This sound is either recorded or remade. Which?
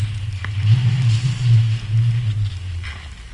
recorded